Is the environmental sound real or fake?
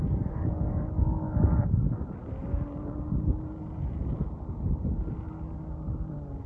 real